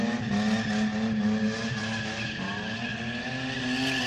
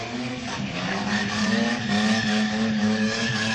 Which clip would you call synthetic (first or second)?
second